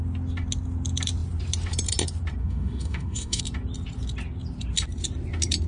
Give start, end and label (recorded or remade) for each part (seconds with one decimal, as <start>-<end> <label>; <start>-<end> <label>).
0.0-2.4 recorded; 2.4-3.4 remade; 3.4-5.7 recorded